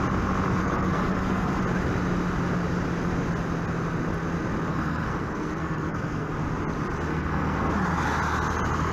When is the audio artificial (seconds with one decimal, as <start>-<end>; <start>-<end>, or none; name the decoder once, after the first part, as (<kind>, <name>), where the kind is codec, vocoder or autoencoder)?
0.6-1.6 (codec, SNAC); 4.7-6.3; 7.1-7.7